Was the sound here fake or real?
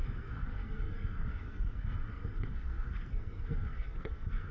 fake